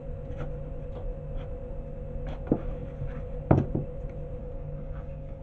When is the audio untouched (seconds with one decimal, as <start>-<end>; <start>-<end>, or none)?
0.0-4.4